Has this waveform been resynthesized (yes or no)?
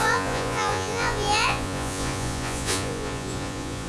yes